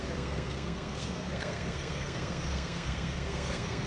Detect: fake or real fake